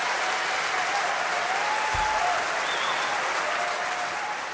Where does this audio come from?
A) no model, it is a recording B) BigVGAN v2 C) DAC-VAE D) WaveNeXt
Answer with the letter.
A